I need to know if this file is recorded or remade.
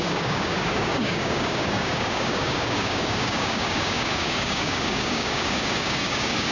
remade